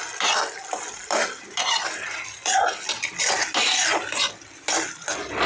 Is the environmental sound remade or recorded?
recorded